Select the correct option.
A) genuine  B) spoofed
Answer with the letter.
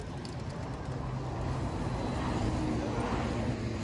A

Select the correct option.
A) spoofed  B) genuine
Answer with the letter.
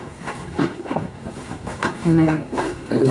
A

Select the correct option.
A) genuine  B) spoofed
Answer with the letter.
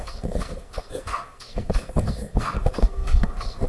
B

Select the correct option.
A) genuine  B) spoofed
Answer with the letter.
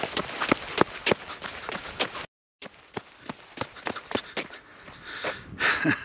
A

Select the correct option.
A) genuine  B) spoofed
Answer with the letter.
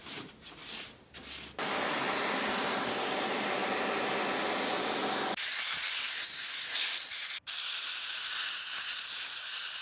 A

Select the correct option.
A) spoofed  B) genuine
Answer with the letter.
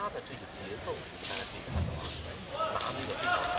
B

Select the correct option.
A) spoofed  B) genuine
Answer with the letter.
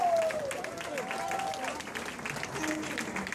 B